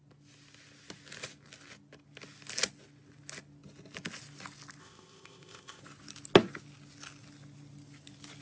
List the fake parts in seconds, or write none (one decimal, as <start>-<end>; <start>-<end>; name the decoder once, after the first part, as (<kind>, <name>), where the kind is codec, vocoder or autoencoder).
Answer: 4.8-5.8 (codec, ZipCodec)